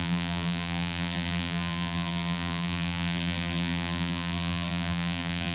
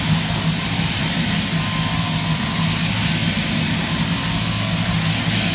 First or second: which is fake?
first